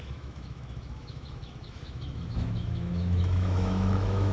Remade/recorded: remade